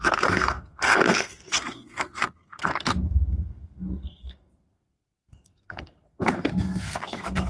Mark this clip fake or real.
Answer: fake